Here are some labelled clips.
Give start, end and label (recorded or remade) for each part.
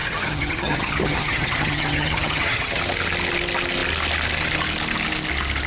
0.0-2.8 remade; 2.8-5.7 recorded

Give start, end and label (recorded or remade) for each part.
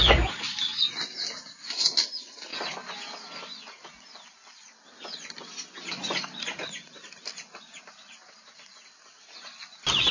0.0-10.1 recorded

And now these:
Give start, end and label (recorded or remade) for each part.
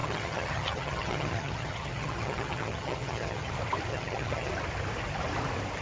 0.0-3.5 remade; 3.5-3.9 recorded; 3.9-4.5 remade; 4.5-5.8 recorded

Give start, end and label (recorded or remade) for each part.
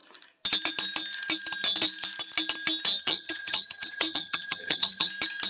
0.0-3.0 recorded; 3.0-5.1 remade; 5.1-5.5 recorded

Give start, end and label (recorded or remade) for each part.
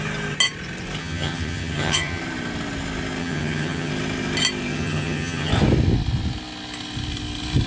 0.0-1.0 recorded; 1.0-2.2 remade; 2.2-3.2 recorded; 3.2-3.9 remade; 3.9-4.7 recorded; 4.7-5.5 remade; 5.5-7.7 recorded